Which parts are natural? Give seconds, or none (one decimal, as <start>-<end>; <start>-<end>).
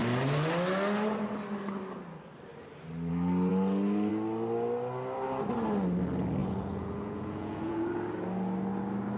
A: 0.0-6.4; 7.9-9.2